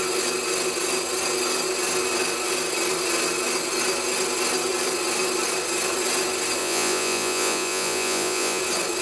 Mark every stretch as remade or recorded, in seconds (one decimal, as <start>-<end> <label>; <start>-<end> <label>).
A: 0.0-6.6 recorded; 6.6-8.6 remade; 8.6-9.0 recorded